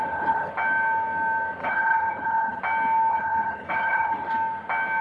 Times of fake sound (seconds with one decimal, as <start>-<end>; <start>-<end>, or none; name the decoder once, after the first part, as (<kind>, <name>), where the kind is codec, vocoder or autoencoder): 0.0-0.5 (codec, HILCodec); 1.6-2.6; 3.1-4.3

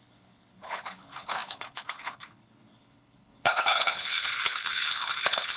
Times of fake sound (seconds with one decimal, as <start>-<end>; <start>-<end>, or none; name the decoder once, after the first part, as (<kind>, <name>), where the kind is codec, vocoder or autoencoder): 0.0-5.6 (codec, HILCodec)

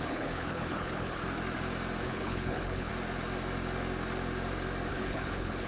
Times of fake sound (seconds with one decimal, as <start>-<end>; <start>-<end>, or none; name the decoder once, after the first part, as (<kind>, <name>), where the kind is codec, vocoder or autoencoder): 0.0-1.2 (codec, HILCodec); 2.0-2.9; 4.9-5.7

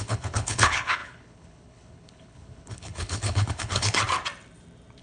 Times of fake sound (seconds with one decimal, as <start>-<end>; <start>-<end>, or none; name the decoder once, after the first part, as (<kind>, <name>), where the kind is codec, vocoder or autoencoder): 0.0-4.0 (codec, HILCodec)